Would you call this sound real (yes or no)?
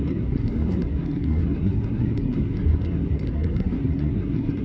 no